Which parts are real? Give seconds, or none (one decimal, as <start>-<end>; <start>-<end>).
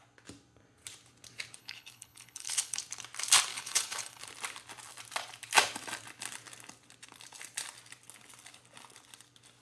0.0-1.6; 2.8-3.5; 4.2-9.6